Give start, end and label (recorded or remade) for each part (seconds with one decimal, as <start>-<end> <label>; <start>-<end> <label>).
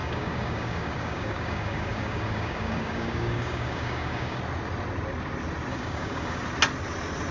0.0-4.4 remade; 4.4-5.7 recorded; 5.7-6.4 remade; 6.4-7.3 recorded